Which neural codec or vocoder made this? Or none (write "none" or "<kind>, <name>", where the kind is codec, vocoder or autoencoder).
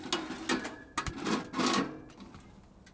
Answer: none